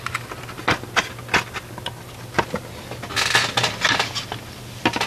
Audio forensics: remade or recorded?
recorded